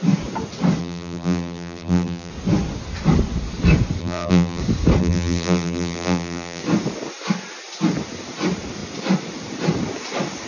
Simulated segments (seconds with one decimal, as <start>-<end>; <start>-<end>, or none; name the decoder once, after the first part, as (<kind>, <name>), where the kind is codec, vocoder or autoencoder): 0.8-2.3 (vocoder, BigVGAN v2); 4.0-4.6; 5.0-6.6